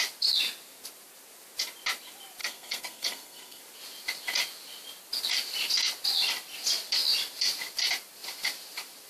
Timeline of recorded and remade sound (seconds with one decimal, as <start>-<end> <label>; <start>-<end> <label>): 0.0-2.4 recorded; 2.4-3.6 remade; 3.6-9.1 recorded